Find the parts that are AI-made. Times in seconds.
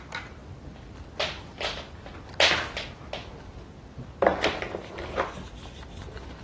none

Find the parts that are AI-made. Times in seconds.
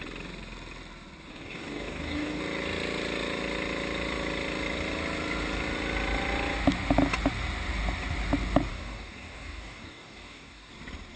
1.3-2.4 (codec, DAC); 8.7-10.7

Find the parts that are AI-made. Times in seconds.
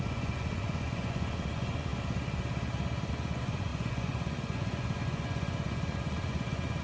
0.0-1.9 (vocoder, Vocos); 3.1-6.8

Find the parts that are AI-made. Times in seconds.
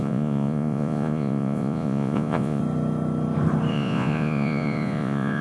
0.0-2.6 (vocoder, Vocos); 3.7-5.4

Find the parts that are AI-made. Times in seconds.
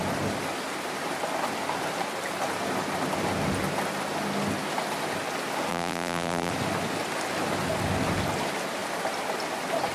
5.7-6.5 (vocoder, BigVGAN v2)